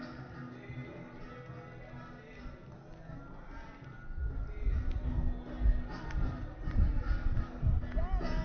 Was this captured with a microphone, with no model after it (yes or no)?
yes